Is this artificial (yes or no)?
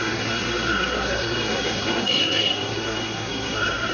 yes